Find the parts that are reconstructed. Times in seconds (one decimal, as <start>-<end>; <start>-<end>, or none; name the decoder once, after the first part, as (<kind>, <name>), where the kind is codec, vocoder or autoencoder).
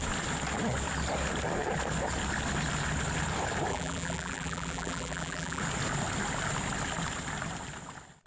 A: 3.7-5.6 (vocoder, BigVGAN v2)